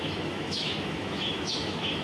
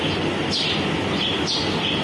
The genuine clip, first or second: second